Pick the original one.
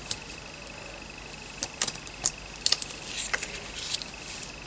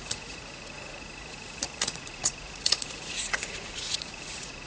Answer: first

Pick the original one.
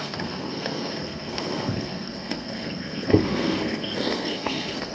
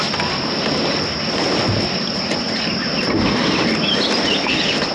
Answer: second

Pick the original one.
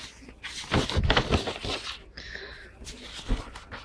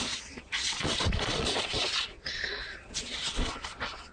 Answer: first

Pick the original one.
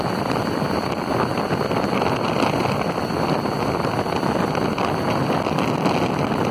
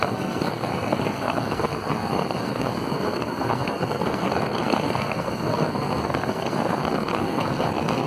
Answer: first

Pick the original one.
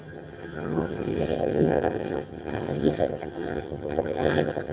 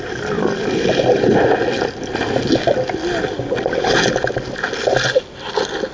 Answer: second